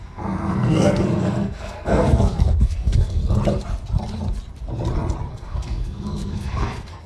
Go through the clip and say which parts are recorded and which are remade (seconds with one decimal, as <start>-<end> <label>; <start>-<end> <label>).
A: 0.0-3.2 remade; 3.2-5.3 recorded; 5.3-7.1 remade